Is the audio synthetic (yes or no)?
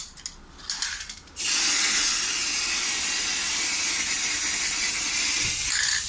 no